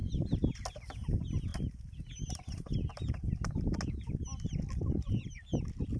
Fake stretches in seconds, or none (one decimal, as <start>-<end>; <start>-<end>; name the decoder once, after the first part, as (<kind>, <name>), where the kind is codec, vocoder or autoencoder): none

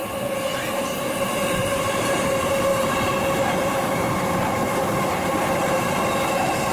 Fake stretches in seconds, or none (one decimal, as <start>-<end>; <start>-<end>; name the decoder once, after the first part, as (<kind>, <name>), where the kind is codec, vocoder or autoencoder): 0.8-6.7 (vocoder, BigVGAN v2)

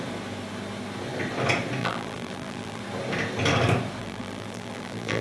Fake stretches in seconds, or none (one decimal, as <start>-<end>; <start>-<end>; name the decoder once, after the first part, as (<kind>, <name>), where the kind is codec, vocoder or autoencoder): 1.8-2.8 (vocoder, BigVGAN v2); 4.0-5.2